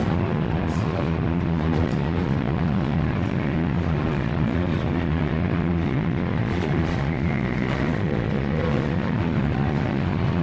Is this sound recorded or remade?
remade